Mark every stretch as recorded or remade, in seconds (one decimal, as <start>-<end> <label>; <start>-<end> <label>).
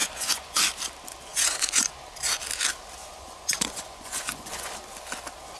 0.0-0.6 remade; 0.6-1.3 recorded; 1.3-1.9 remade; 1.9-3.0 recorded; 3.0-4.7 remade; 4.7-5.6 recorded